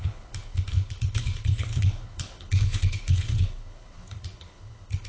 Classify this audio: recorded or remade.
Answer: remade